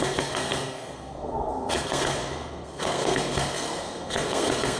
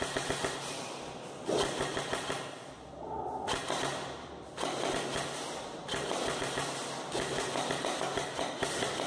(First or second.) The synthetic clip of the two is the first